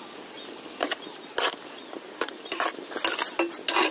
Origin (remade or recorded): recorded